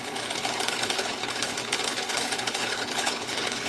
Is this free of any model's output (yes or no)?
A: no